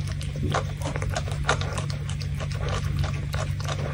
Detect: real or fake real